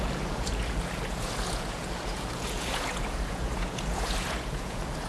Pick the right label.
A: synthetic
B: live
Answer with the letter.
A